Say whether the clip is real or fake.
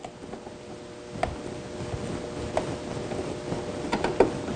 real